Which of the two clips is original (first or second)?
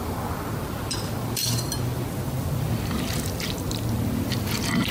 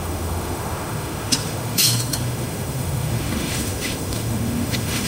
first